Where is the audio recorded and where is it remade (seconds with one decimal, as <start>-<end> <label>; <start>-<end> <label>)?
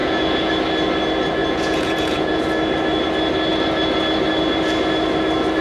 0.0-0.5 remade; 0.5-1.4 recorded; 1.4-2.4 remade; 2.4-5.6 recorded